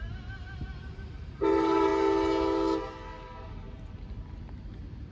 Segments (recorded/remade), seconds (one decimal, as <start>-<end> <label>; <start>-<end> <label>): 0.0-1.9 remade; 1.9-5.1 recorded